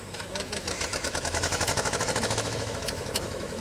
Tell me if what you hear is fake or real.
fake